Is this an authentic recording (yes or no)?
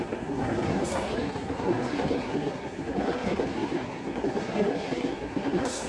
no